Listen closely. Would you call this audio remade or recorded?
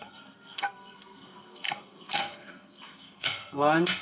remade